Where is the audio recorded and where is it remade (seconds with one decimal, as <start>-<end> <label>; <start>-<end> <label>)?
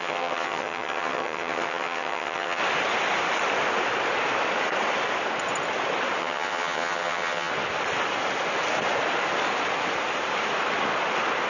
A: 0.0-2.6 remade; 2.6-6.2 recorded; 6.2-7.5 remade; 7.5-11.5 recorded